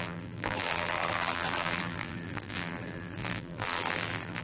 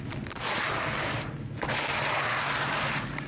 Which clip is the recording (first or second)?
second